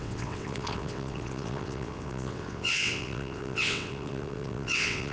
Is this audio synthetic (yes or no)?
yes